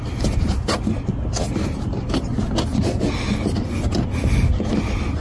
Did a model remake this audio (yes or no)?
no